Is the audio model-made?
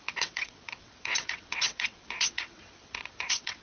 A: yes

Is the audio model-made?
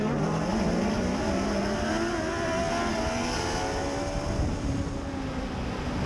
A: no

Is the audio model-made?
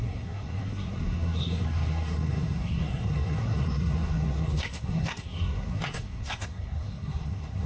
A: yes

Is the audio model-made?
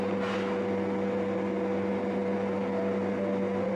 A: no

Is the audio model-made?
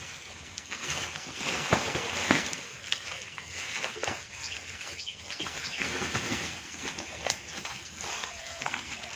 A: yes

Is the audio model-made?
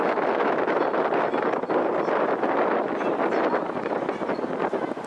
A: no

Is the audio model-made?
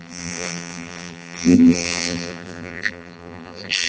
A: yes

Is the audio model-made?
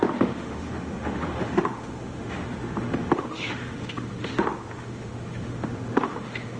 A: yes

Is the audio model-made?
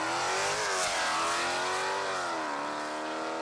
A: no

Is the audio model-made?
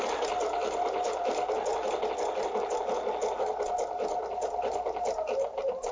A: no